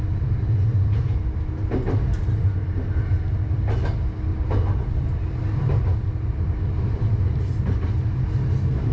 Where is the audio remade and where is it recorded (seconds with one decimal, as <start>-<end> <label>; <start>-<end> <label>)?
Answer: 0.0-4.3 recorded; 4.3-7.6 remade; 7.6-8.9 recorded